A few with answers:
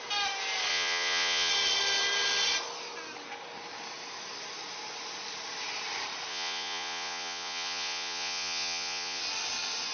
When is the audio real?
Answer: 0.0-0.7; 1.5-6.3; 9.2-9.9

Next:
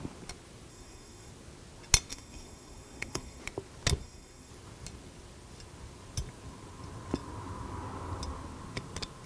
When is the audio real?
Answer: 0.0-0.7; 1.3-2.1; 3.4-4.0; 4.5-9.3

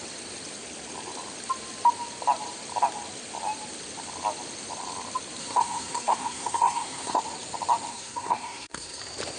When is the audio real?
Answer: 0.0-5.4; 7.2-7.9; 9.0-9.4

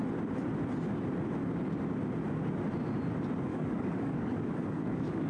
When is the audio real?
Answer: 0.0-3.5

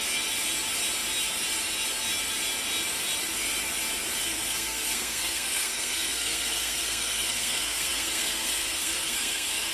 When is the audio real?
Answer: 0.0-4.2